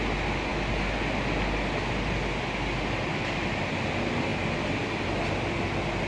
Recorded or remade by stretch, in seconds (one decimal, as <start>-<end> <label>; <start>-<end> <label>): 0.0-6.1 recorded